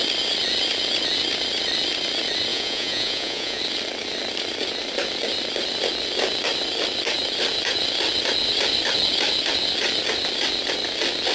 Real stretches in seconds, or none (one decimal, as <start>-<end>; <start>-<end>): 0.0-2.5; 3.6-11.3

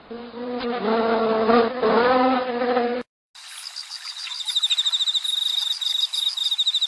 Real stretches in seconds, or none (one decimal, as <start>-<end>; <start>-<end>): 3.3-3.9; 4.3-5.5

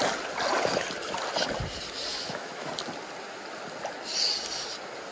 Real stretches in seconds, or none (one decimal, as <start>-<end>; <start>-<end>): 0.0-2.1; 2.7-5.1

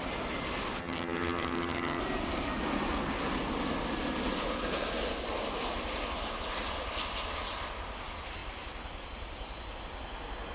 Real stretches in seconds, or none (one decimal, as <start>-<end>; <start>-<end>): 0.0-0.8; 2.0-10.5

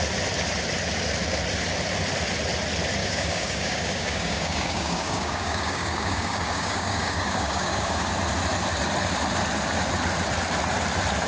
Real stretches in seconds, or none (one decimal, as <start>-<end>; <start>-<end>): 0.0-3.0; 8.1-11.3